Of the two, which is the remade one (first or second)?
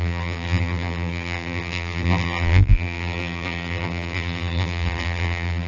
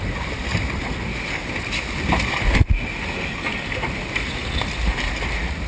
first